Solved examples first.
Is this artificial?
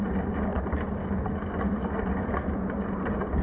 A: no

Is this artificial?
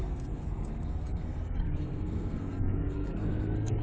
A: yes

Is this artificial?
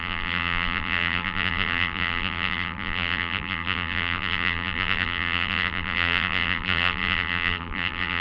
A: yes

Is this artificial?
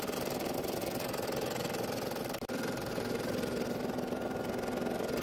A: no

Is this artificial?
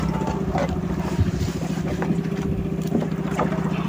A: no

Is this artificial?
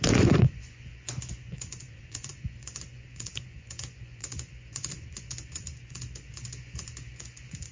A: yes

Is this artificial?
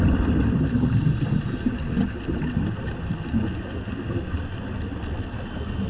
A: no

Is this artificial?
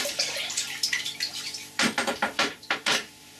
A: yes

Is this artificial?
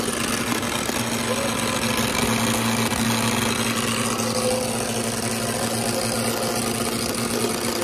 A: no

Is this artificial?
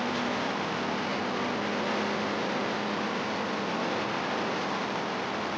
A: no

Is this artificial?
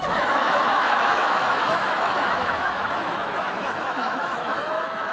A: yes